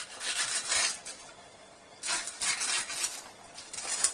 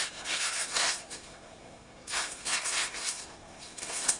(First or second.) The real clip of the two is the first